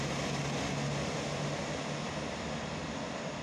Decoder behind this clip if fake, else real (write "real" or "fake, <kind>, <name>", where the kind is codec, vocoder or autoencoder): real